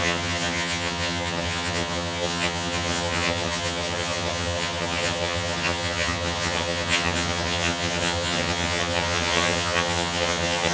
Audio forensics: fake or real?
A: fake